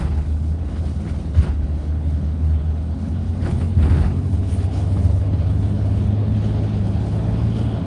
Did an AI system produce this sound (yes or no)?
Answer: yes